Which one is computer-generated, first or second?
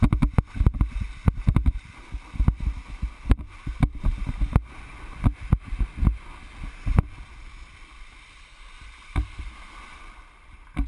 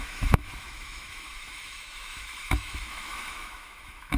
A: second